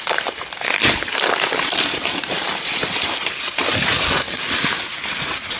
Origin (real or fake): real